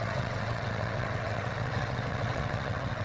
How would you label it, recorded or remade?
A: remade